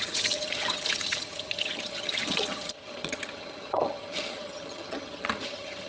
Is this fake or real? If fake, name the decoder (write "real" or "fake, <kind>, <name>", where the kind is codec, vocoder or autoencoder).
fake, vocoder, HiFi-GAN